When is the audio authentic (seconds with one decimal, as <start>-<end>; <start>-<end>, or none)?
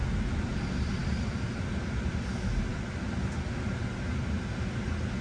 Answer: 0.0-5.2